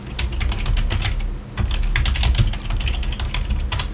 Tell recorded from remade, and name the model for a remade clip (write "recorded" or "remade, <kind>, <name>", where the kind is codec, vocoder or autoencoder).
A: recorded